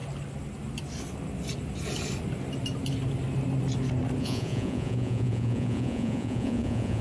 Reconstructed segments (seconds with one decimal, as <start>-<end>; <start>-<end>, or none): 4.2-7.0